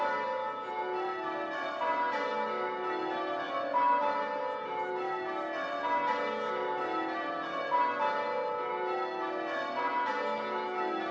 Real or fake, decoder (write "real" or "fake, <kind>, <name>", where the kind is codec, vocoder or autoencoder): real